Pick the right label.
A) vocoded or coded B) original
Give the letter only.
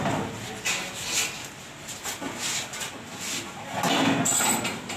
B